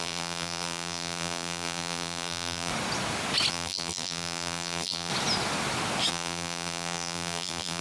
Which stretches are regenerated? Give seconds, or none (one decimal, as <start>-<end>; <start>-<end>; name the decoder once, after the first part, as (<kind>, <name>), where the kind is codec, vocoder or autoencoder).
0.0-2.7 (vocoder, BigVGAN v2); 3.5-5.1; 6.1-7.8